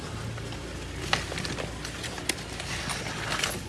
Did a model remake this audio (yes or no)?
no